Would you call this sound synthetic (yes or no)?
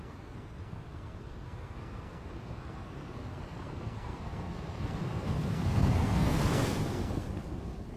yes